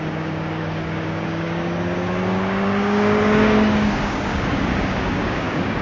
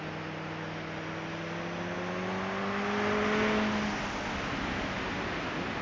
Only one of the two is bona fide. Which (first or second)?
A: second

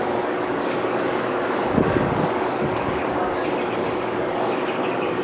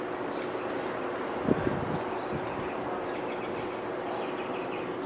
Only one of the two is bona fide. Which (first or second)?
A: second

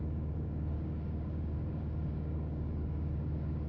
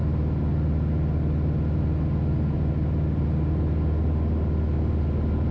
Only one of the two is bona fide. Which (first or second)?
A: second